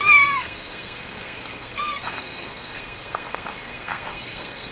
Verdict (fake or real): fake